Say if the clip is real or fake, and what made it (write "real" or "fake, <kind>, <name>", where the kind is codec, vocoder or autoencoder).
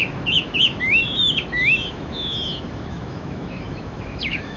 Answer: fake, autoencoder, DAC-VAE